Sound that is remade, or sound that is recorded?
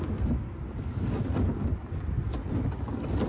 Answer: recorded